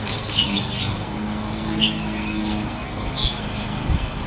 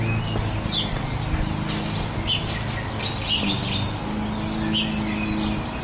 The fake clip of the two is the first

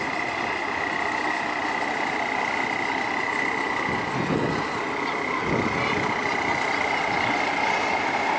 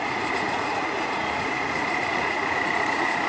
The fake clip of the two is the second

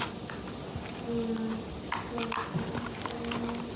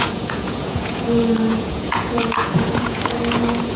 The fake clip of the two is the second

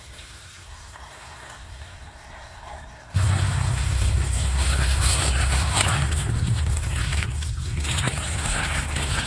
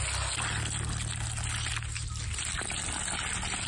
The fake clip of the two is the first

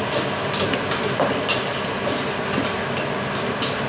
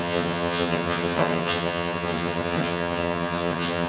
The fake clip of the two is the second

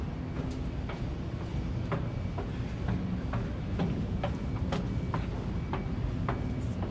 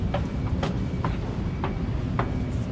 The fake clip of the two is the second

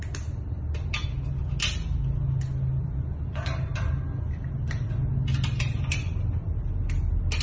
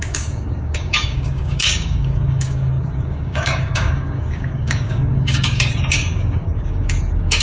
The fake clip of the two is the second